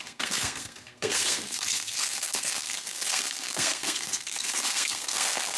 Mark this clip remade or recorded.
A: remade